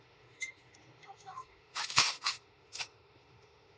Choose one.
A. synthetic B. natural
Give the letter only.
A